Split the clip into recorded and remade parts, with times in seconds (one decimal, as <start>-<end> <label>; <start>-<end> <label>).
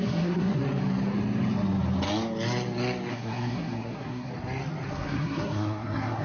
0.0-0.6 remade; 0.6-3.1 recorded; 3.1-4.3 remade; 4.3-4.9 recorded; 4.9-6.2 remade